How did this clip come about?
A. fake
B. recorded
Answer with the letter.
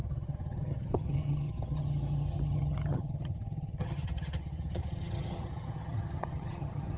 A